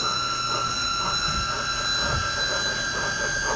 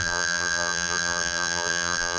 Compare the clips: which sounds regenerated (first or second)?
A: second